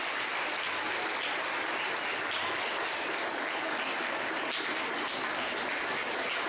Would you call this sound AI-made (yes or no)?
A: no